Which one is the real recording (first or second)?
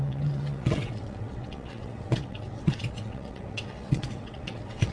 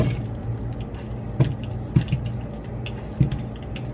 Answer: second